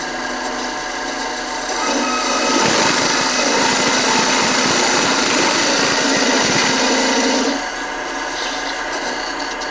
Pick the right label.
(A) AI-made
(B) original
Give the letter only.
B